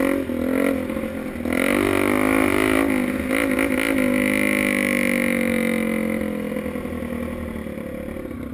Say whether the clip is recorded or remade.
recorded